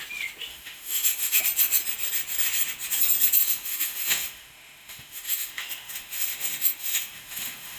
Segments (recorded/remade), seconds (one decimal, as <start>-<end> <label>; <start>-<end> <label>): 0.0-0.5 recorded; 0.5-1.4 remade; 1.4-3.4 recorded; 3.4-7.8 remade